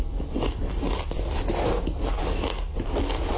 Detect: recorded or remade recorded